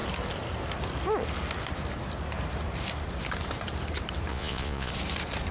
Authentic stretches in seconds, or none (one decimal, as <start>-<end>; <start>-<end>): 0.0-4.3; 4.9-5.5